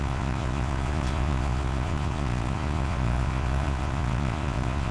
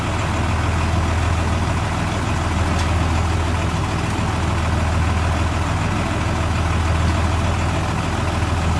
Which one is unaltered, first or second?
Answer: second